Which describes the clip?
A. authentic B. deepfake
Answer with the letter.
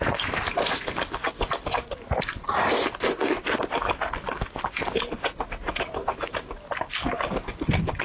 A